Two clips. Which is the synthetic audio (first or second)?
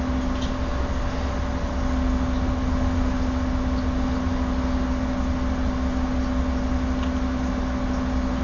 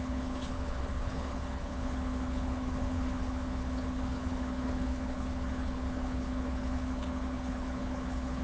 second